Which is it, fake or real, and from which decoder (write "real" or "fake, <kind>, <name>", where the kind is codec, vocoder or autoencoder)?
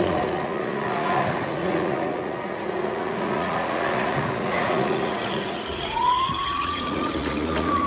fake, vocoder, Vocos